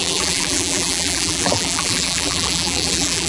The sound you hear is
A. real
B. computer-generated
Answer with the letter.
B